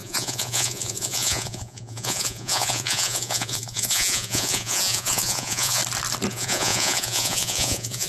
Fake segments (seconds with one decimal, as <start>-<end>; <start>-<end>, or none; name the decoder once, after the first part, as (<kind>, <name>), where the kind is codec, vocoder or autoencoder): 0.0-5.8 (vocoder, Vocos); 6.3-8.1